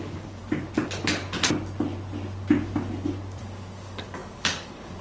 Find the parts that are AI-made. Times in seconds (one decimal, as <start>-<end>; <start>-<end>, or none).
0.0-0.4; 3.4-5.0

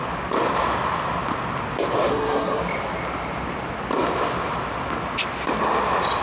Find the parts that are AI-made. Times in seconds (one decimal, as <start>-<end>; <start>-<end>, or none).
2.1-2.6

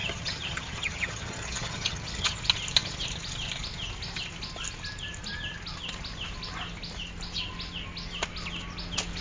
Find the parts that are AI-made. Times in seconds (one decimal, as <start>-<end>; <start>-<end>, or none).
0.0-2.4

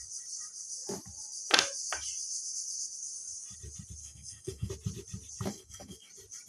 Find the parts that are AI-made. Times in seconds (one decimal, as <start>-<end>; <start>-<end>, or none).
4.0-4.7; 5.5-6.1

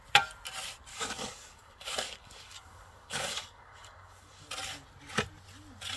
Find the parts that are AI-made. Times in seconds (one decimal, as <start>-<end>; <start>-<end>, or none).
0.9-4.5

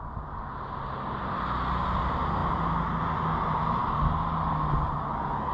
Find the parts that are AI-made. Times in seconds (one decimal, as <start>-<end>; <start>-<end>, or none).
none

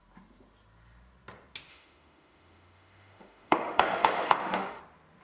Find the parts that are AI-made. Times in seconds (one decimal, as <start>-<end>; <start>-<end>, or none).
1.7-4.8

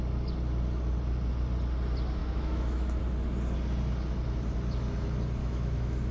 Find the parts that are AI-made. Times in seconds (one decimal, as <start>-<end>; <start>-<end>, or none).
2.2-3.0; 5.4-6.1